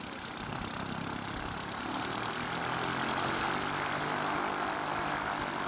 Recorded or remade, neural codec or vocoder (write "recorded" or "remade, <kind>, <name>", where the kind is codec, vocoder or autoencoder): recorded